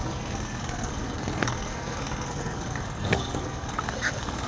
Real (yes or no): no